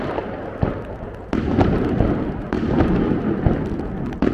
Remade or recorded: recorded